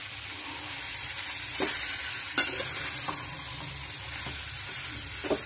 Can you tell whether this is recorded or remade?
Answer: recorded